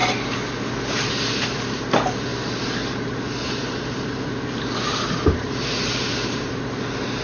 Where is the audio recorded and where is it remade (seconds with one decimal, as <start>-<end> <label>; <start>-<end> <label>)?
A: 0.0-2.3 recorded; 2.3-6.6 remade; 6.6-7.2 recorded